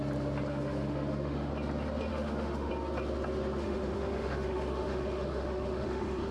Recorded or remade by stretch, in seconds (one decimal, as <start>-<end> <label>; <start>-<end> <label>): 0.0-0.5 recorded; 0.5-1.5 remade; 1.5-2.1 recorded; 2.1-2.7 remade; 2.7-3.6 recorded; 3.6-6.3 remade